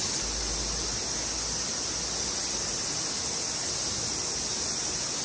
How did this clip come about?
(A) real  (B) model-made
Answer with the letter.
A